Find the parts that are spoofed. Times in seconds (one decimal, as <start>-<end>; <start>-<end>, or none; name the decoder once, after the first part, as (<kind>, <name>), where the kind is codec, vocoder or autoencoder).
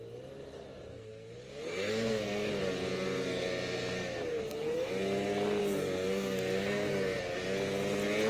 0.9-2.5 (codec, SNAC); 4.3-4.9; 5.6-7.2